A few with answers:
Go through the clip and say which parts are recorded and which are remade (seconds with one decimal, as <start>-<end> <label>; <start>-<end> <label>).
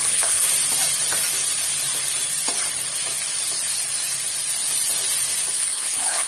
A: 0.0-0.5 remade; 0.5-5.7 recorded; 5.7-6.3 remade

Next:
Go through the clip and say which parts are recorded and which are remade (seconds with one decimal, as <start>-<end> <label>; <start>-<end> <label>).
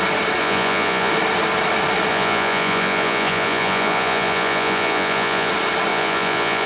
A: 0.0-0.4 recorded; 0.4-1.1 remade; 1.1-2.1 recorded; 2.1-5.5 remade; 5.5-5.9 recorded; 5.9-6.7 remade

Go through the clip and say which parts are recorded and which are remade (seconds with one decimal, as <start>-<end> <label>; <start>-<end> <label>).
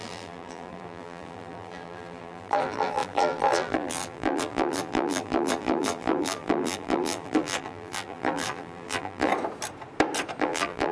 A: 0.0-9.3 remade; 9.3-10.4 recorded; 10.4-10.9 remade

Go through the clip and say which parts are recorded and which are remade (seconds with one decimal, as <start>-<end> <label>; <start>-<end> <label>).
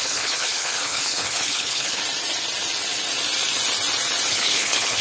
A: 0.0-2.0 remade; 2.0-4.3 recorded; 4.3-5.0 remade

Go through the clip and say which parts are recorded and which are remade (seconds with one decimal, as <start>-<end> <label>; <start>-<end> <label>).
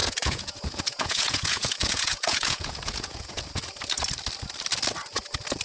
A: 0.0-3.4 remade; 3.4-5.6 recorded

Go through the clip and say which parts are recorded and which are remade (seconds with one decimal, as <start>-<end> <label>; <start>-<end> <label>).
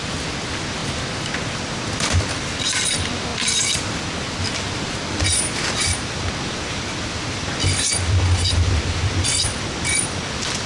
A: 0.0-0.8 remade; 0.8-1.3 recorded; 1.3-10.7 remade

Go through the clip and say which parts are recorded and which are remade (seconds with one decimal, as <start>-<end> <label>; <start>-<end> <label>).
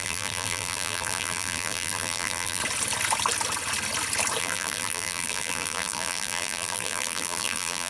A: 0.0-2.6 remade; 2.6-4.4 recorded; 4.4-7.9 remade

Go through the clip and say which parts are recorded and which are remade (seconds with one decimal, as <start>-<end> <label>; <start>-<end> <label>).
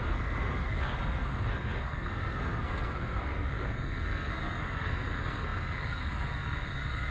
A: 0.0-7.1 remade